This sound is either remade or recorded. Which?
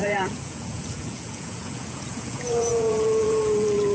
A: remade